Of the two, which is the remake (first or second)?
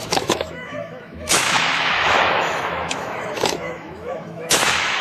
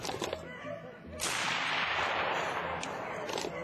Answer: first